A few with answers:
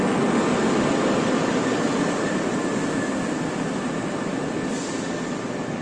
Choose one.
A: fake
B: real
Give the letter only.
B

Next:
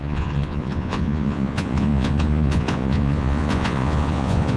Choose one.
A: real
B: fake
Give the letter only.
B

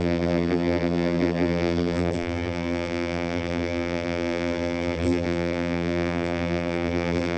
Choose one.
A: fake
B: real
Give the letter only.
A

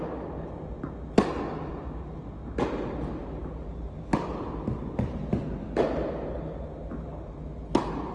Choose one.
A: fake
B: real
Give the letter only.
B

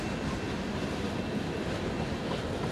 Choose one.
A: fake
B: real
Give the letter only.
B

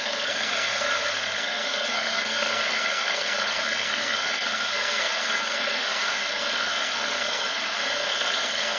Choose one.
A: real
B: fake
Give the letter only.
B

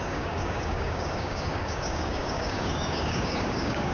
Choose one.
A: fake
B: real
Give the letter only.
A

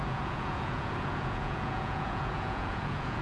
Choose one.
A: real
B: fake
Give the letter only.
B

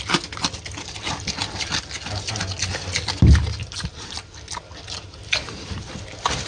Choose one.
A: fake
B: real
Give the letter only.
B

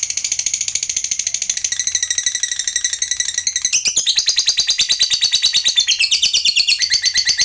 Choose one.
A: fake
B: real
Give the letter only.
B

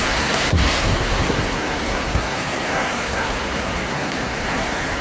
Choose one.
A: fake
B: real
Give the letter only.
A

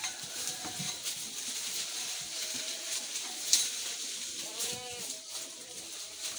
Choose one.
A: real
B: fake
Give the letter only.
B